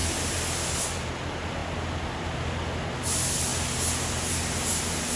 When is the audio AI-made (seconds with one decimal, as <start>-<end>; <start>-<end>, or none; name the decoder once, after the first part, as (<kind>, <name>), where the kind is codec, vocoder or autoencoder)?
none